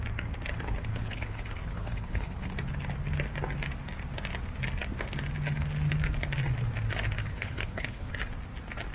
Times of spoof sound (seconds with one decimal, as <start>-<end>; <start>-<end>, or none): 0.9-2.5; 7.2-8.1